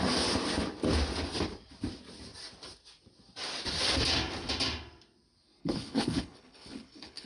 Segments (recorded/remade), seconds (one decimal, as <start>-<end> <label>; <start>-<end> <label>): 0.0-5.6 recorded; 5.6-7.3 remade